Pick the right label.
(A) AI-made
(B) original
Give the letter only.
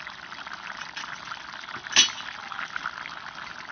B